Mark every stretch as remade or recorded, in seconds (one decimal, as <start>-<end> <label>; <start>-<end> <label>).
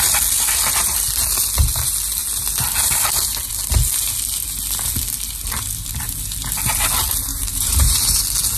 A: 0.0-7.3 recorded; 7.3-8.2 remade; 8.2-8.6 recorded